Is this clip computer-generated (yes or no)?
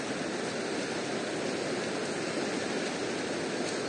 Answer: no